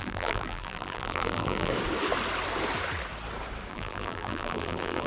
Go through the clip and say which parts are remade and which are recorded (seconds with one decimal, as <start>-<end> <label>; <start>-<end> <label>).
0.0-1.7 remade; 1.7-3.7 recorded; 3.7-5.1 remade